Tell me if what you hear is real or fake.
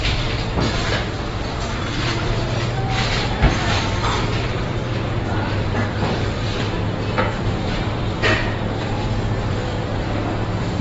fake